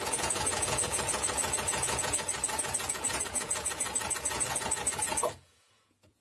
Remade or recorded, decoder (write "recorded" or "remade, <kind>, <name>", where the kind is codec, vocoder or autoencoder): remade, vocoder, Vocos